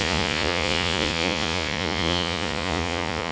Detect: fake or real fake